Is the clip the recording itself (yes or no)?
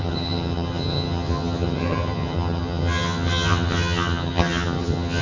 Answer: no